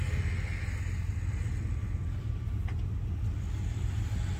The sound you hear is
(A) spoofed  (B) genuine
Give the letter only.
B